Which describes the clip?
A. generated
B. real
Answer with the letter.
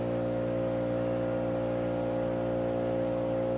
B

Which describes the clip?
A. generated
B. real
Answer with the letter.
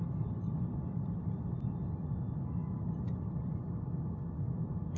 B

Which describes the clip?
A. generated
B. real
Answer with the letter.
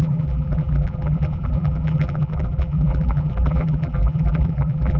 A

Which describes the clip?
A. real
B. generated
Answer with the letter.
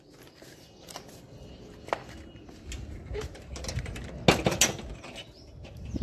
A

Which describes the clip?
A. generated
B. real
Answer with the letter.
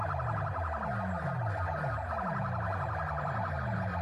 B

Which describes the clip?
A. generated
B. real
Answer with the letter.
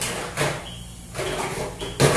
B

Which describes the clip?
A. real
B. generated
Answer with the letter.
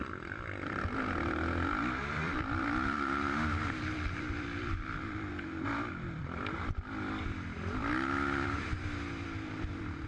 B